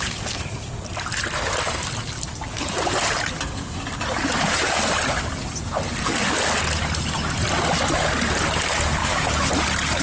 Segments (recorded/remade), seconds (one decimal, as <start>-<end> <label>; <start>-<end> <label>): 0.0-9.0 recorded; 9.0-9.5 remade; 9.5-10.0 recorded